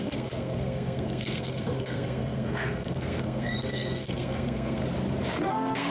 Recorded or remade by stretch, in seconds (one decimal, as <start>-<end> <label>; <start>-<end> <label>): 0.0-4.8 remade; 4.8-5.5 recorded; 5.5-5.9 remade